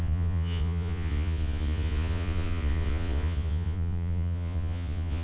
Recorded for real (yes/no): no